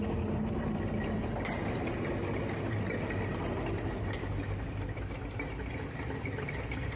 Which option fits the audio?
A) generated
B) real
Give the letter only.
B